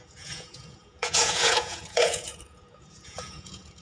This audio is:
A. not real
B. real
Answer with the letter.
A